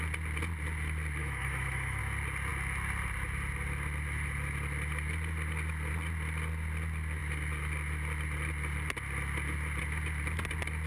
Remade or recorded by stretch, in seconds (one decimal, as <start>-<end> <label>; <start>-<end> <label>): 0.0-1.2 recorded; 1.2-2.0 remade; 2.0-10.9 recorded